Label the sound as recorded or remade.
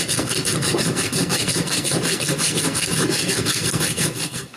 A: remade